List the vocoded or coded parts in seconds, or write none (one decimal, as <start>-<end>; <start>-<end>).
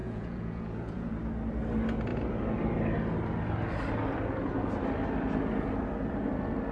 0.0-1.1